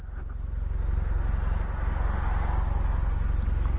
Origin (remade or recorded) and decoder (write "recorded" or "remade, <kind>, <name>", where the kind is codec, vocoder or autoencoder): recorded